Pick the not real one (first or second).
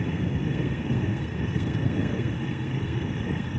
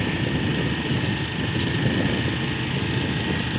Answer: first